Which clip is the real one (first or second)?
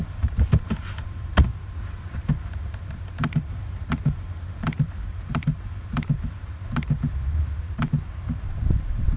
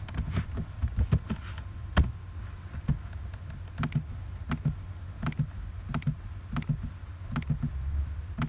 second